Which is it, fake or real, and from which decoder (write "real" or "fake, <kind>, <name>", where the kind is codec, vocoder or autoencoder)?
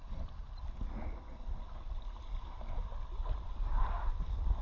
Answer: real